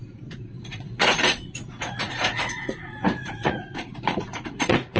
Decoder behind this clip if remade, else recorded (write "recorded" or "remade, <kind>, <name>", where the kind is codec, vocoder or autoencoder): remade, vocoder, Vocos